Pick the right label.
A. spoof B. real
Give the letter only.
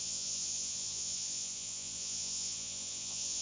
A